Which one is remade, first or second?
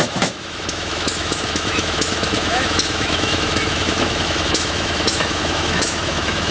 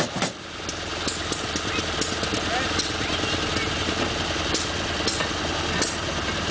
first